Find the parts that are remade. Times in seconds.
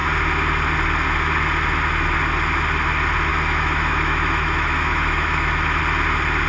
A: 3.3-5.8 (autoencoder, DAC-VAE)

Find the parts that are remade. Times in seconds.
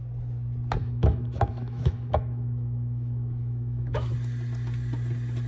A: 0.8-4.1 (autoencoder, DAC-VAE)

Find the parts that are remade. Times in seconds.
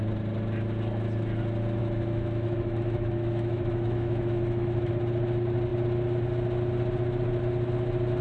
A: 1.8-4.9 (autoencoder, DAC-VAE)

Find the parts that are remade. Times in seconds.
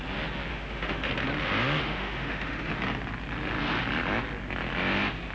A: 0.5-1.1 (autoencoder, DAC-VAE); 1.8-2.7